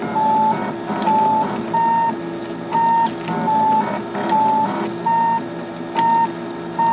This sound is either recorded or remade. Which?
recorded